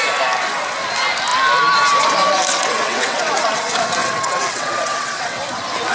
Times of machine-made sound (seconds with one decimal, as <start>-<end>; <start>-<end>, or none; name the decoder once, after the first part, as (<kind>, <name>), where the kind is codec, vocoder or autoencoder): 2.5-3.6 (vocoder, WaveNeXt); 4.0-5.4